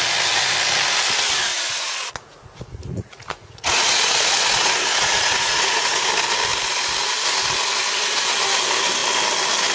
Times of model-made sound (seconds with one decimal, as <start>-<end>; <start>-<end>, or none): 1.5-6.1